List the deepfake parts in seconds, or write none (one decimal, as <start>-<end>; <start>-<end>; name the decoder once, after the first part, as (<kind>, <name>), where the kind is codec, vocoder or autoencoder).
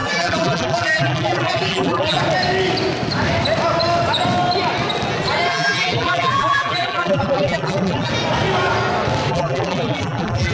0.0-2.2 (vocoder, BigVGAN v2); 5.5-8.1; 9.3-10.5